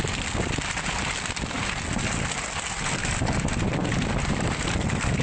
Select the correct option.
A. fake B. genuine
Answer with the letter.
B